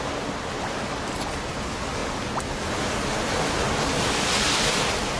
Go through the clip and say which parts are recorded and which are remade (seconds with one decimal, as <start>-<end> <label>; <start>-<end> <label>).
0.0-5.2 recorded